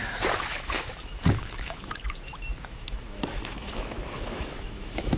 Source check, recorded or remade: remade